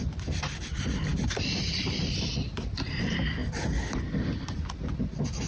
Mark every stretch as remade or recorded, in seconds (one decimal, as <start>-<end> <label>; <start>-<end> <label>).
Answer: 0.0-3.4 remade; 3.4-5.5 recorded